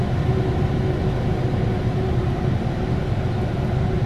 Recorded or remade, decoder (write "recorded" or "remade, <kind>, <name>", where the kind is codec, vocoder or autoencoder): recorded